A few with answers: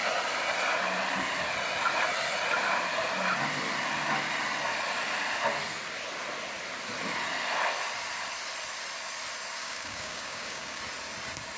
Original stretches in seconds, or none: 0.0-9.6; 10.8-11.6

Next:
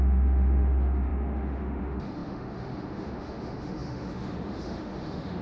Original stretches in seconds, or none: none

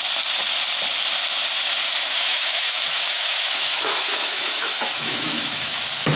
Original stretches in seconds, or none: 0.0-2.1; 5.8-6.2

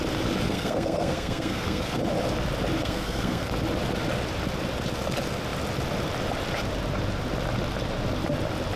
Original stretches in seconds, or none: 0.0-0.5; 2.0-2.8; 3.5-8.8

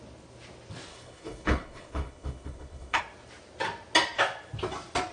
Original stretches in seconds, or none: 0.0-0.9; 3.0-5.1